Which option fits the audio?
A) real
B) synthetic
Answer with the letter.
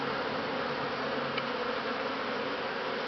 A